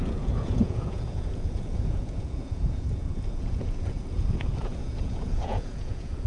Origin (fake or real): fake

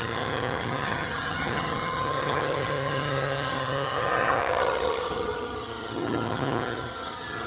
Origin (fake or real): fake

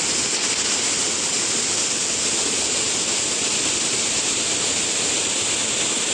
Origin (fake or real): real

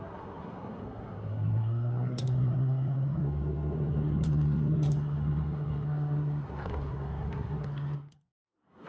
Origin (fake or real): fake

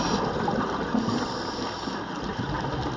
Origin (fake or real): real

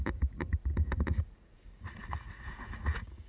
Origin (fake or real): fake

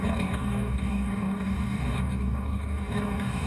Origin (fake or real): fake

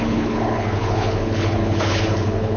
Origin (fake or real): fake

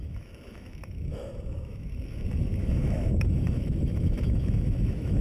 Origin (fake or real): fake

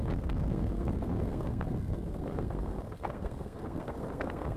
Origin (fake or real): fake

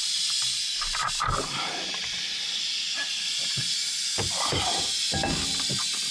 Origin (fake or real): real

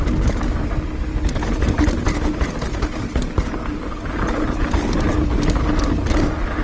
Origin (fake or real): real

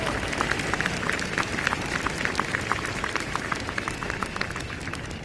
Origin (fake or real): fake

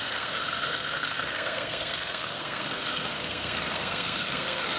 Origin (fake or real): fake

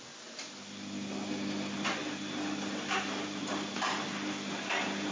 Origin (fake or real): real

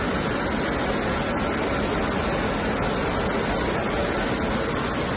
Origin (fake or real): real